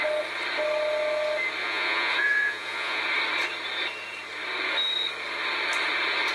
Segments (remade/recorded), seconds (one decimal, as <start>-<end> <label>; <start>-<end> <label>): 0.0-1.6 recorded; 1.6-3.0 remade; 3.0-6.3 recorded